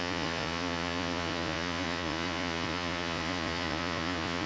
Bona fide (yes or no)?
no